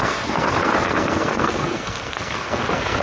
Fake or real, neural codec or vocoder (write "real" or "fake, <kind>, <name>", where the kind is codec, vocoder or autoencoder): fake, codec, SNAC